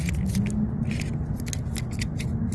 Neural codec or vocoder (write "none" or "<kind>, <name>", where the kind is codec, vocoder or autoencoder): none